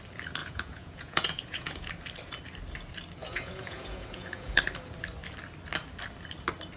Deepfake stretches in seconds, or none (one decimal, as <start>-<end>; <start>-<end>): 0.4-1.9; 3.2-4.6